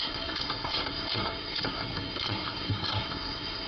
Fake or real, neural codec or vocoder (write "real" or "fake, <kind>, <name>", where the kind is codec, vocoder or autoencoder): fake, codec, SNAC